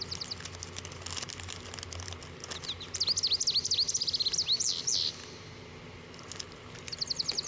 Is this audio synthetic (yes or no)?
no